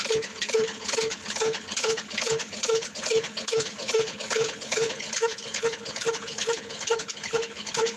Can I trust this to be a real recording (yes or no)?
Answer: no